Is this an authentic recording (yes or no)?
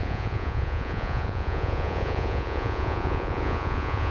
no